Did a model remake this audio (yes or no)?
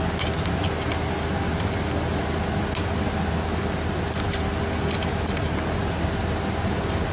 no